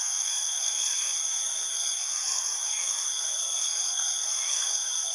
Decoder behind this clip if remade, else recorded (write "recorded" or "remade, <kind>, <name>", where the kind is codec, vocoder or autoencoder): remade, codec, SNAC